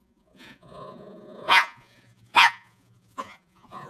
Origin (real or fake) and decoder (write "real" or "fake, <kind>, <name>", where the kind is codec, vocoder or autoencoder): fake, vocoder, Vocos